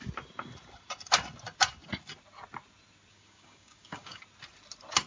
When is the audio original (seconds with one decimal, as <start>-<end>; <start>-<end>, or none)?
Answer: 0.0-3.1; 4.2-5.1